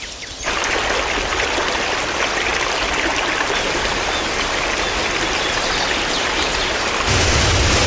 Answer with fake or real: real